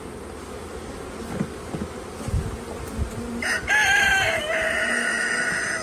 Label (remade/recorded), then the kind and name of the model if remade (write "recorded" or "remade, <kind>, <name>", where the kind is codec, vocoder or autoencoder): recorded